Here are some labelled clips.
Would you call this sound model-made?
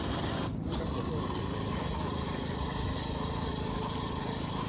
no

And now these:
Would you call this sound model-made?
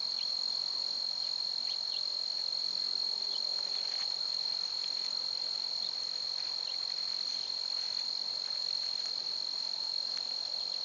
yes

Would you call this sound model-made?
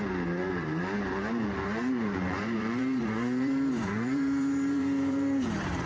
yes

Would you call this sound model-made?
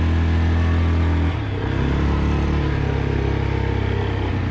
no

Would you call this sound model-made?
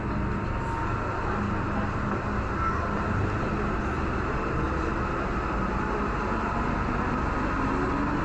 no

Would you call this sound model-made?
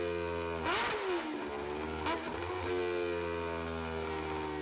no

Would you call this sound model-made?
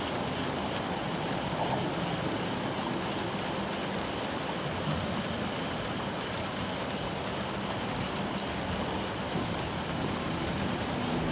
no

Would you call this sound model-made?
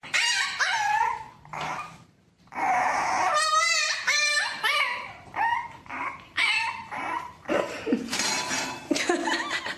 yes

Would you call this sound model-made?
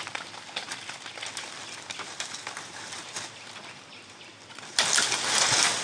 no